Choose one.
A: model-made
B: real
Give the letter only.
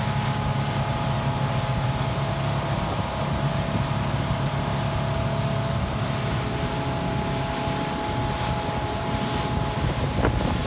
B